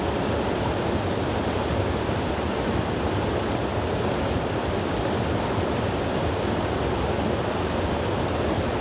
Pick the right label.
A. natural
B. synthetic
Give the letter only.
A